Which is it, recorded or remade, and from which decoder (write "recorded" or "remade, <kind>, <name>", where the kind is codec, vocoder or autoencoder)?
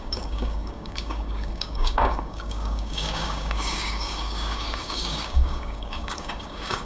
remade, codec, DAC